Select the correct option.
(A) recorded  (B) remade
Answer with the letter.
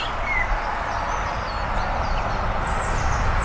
A